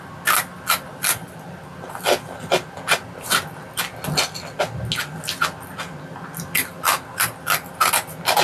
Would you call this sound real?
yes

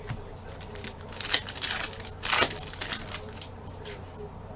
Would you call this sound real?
yes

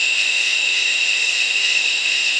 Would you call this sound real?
no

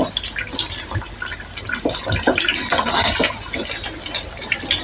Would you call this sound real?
yes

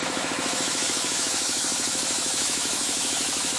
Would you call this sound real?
no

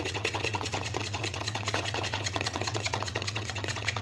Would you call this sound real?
no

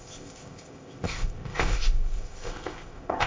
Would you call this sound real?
no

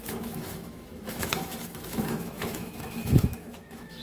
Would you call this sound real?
no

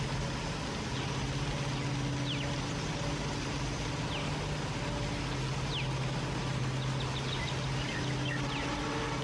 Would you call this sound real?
yes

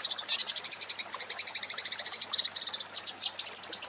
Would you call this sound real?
yes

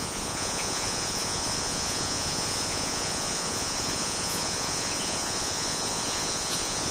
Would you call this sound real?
no